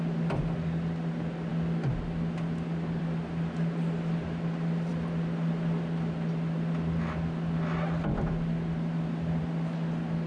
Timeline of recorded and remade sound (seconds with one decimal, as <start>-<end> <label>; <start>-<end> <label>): 0.0-10.3 recorded